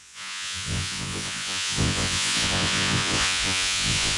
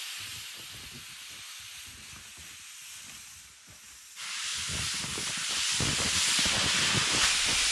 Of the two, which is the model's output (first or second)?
first